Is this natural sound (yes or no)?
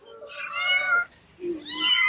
yes